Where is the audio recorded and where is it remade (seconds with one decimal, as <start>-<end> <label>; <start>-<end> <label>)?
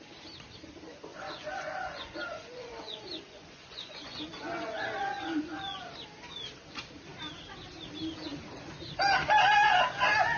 0.0-1.1 recorded; 1.1-5.8 remade; 5.8-10.4 recorded